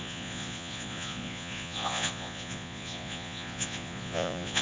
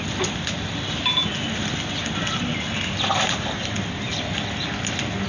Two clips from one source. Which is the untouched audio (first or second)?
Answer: second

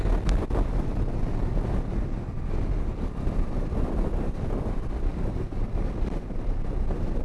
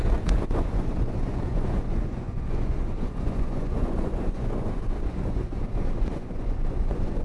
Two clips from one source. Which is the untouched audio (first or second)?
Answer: first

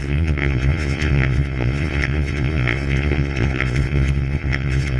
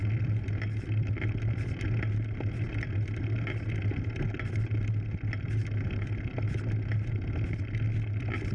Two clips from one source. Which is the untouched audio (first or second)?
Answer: second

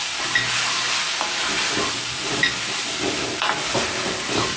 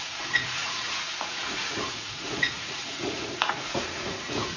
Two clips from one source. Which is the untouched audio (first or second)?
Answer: first